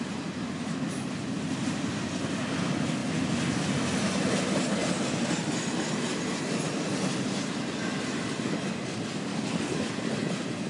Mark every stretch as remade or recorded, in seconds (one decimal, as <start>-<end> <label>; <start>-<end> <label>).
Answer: 0.0-9.3 recorded; 9.3-9.9 remade; 9.9-10.7 recorded